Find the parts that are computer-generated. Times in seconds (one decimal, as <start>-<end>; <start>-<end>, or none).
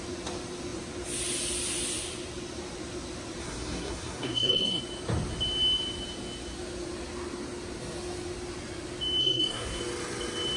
3.4-4.8; 9.2-9.8